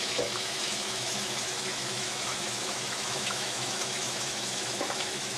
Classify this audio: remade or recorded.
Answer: remade